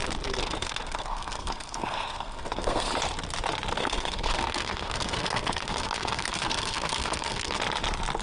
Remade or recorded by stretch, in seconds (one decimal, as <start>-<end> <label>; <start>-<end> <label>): 0.0-0.4 recorded; 0.4-2.9 remade; 2.9-3.8 recorded; 3.8-7.6 remade; 7.6-8.2 recorded